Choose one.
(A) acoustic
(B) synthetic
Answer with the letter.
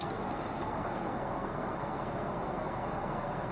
B